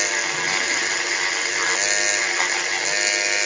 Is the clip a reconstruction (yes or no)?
no